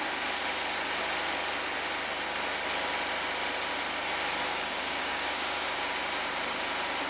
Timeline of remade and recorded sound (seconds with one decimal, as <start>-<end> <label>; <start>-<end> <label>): 0.0-4.5 recorded; 4.5-6.0 remade; 6.0-7.1 recorded